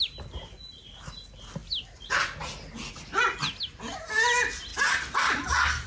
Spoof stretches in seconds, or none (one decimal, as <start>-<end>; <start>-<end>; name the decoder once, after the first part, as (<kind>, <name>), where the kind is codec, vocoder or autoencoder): none